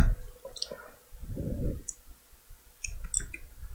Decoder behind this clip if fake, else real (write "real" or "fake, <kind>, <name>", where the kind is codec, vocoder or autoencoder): real